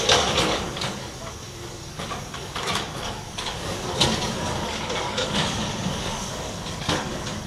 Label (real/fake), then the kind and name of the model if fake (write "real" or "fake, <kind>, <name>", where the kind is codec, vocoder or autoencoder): fake, codec, DAC